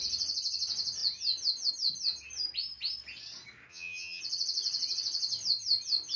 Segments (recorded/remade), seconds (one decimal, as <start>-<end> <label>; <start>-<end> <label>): 0.0-3.7 recorded; 3.7-4.2 remade; 4.2-6.2 recorded